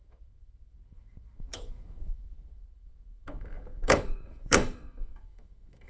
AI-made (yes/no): yes